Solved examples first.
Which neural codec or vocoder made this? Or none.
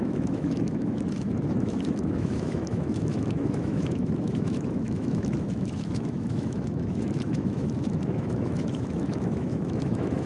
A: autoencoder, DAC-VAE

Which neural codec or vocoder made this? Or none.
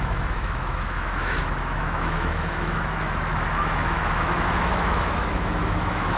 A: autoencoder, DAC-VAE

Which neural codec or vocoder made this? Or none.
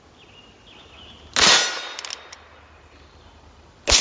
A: none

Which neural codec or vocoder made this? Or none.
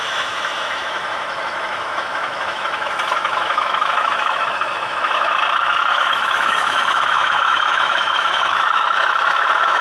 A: autoencoder, DAC-VAE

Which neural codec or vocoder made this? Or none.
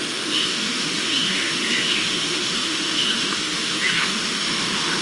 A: autoencoder, DAC-VAE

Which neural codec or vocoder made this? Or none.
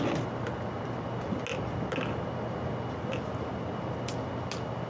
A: none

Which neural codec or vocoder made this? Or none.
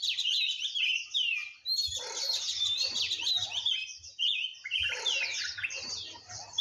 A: none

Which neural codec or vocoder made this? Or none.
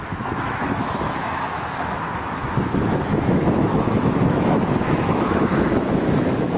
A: autoencoder, DAC-VAE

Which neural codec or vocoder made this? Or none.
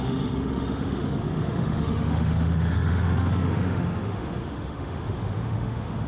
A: autoencoder, DAC-VAE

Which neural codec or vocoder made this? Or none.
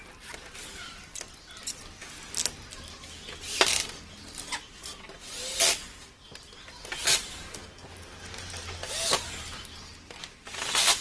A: none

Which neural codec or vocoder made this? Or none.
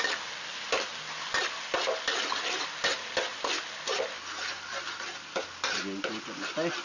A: none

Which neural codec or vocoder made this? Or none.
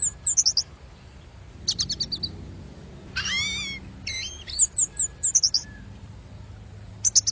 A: none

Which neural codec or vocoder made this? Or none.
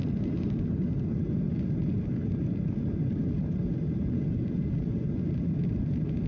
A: none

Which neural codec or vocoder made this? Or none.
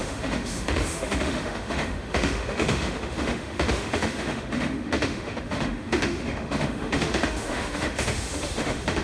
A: autoencoder, DAC-VAE